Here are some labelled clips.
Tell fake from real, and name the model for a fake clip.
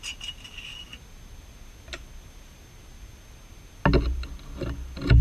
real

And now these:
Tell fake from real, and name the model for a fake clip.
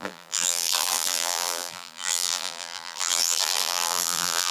fake, vocoder, BigVGAN v2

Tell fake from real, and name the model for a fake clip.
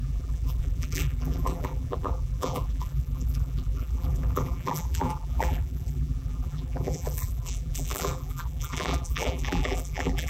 fake, vocoder, BigVGAN v2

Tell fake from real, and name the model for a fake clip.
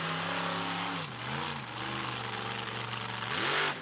real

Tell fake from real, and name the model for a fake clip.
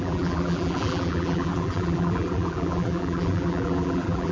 fake, vocoder, BigVGAN v2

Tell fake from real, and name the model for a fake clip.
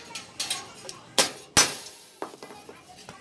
real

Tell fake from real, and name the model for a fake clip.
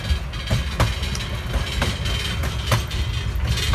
real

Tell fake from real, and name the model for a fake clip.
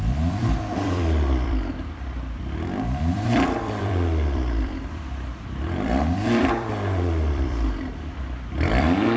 fake, vocoder, BigVGAN v2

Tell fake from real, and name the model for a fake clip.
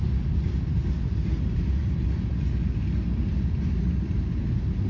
real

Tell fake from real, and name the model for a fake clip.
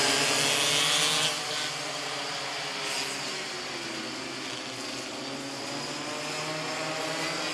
real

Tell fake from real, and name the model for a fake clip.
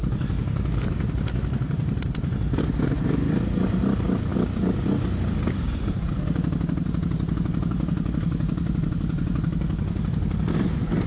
fake, vocoder, BigVGAN v2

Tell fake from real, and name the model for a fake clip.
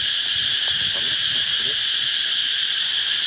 fake, vocoder, BigVGAN v2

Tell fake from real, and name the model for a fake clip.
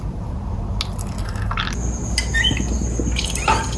real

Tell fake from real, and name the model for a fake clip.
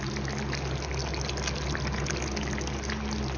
real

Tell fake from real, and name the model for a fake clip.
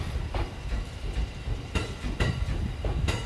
real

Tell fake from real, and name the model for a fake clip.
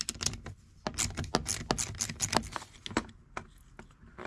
real